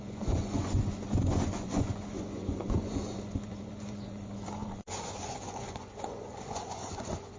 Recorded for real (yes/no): no